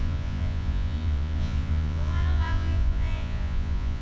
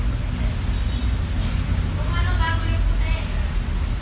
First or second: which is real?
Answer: second